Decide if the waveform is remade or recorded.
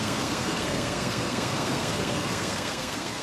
remade